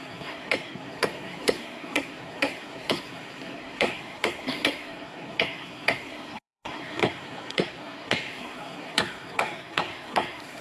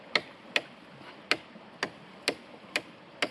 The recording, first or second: second